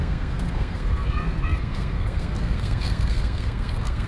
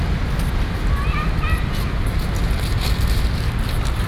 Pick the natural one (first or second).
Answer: second